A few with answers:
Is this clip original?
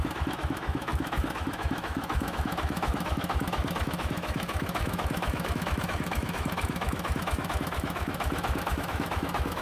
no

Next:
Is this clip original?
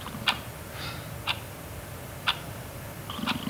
yes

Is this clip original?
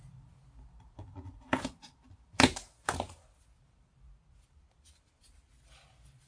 yes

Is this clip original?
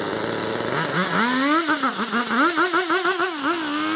yes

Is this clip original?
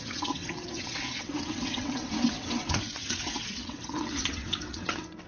no